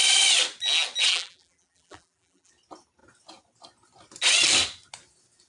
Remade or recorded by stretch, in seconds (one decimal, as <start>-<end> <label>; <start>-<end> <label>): 0.0-1.1 recorded; 1.1-2.5 remade; 2.5-5.5 recorded